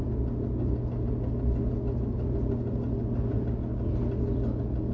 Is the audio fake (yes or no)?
no